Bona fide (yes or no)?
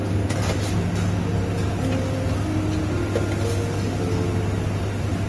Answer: yes